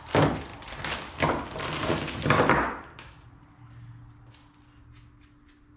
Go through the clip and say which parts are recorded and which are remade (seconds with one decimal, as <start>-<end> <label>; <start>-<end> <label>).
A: 0.0-5.8 recorded